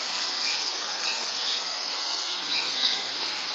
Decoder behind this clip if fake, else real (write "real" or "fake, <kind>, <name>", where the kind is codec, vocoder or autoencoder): fake, codec, SNAC